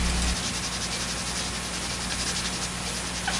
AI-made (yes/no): no